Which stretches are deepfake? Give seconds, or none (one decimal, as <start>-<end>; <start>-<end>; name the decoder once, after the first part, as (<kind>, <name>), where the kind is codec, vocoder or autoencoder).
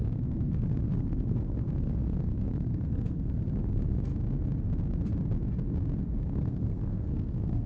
0.0-4.1 (codec, SNAC); 6.2-7.7